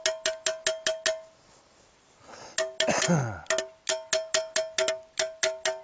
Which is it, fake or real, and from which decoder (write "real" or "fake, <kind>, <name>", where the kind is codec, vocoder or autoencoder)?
real